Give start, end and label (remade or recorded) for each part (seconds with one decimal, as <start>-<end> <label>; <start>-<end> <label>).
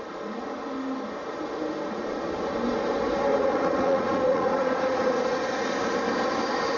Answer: 0.0-3.3 recorded; 3.3-5.7 remade; 5.7-6.8 recorded